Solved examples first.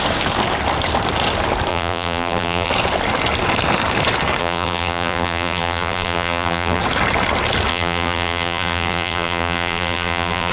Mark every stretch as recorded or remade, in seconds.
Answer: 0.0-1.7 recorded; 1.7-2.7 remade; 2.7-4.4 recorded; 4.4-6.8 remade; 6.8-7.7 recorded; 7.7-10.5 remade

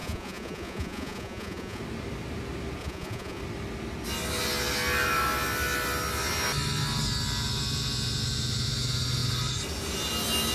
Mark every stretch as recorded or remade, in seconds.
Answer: 0.0-1.8 remade; 1.8-2.8 recorded; 2.8-3.4 remade; 3.4-10.5 recorded

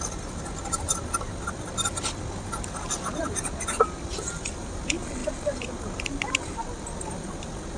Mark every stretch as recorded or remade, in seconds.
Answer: 0.0-7.8 recorded

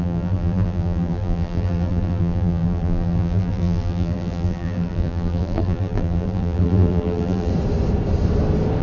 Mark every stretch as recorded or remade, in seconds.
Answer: 0.0-7.5 remade; 7.5-8.8 recorded

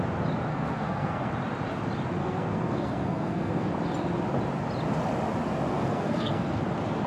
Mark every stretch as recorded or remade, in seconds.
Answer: 0.0-0.5 recorded; 0.5-1.3 remade; 1.3-2.2 recorded; 2.2-3.7 remade; 3.7-5.7 recorded; 5.7-6.6 remade; 6.6-7.1 recorded